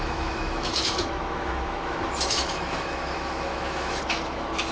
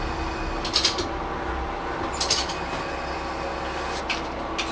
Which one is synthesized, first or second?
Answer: first